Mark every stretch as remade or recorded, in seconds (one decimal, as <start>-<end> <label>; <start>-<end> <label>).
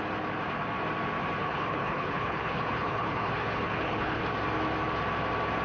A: 0.0-1.4 recorded; 1.4-4.2 remade; 4.2-5.6 recorded